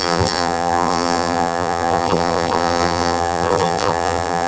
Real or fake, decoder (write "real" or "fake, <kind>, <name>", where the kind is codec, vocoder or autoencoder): fake, vocoder, BigVGAN v2